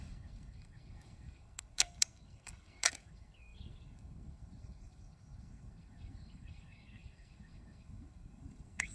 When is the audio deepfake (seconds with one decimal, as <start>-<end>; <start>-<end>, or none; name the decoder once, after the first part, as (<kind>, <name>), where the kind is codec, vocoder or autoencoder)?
0.0-8.9 (codec, SNAC)